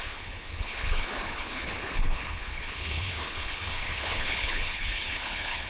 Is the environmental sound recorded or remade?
remade